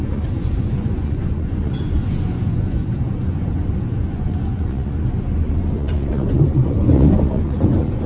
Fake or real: fake